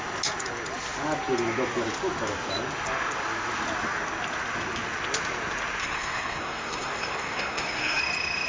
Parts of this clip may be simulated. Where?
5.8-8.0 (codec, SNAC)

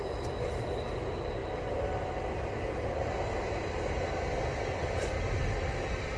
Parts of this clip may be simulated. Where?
none

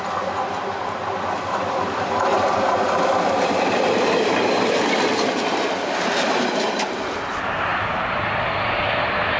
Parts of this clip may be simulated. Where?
none